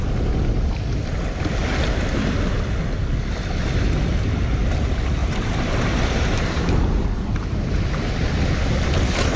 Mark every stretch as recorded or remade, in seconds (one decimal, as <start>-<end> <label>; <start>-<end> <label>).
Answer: 0.0-5.2 recorded; 5.2-8.3 remade; 8.3-9.4 recorded